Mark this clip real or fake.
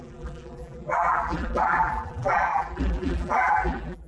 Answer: fake